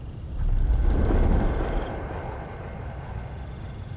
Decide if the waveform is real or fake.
real